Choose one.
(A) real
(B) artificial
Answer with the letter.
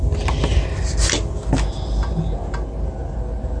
A